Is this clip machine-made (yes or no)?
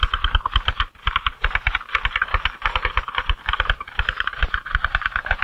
yes